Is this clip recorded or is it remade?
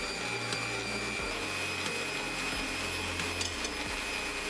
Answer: recorded